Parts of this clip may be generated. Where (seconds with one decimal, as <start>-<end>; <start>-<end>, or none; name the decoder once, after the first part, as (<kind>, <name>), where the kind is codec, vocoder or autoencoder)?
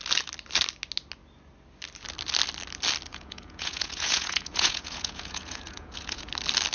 3.1-6.3 (vocoder, Vocos)